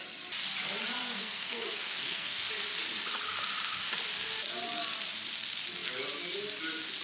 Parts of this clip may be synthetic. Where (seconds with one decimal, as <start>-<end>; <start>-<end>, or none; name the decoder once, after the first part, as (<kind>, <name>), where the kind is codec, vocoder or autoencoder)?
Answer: 1.0-2.5 (codec, SNAC)